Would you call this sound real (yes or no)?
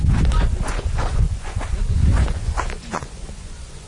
no